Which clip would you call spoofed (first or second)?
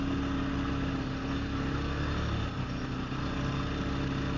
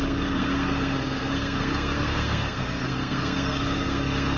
second